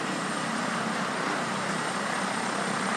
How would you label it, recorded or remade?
remade